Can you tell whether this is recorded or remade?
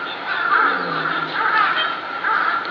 recorded